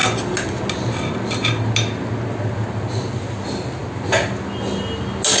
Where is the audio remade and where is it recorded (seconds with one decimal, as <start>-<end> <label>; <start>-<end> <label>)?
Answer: 0.0-5.4 recorded